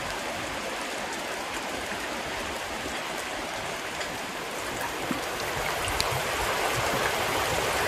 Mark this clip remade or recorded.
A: remade